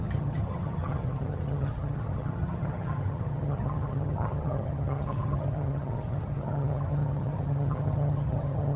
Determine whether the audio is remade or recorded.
remade